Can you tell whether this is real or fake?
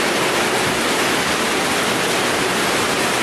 real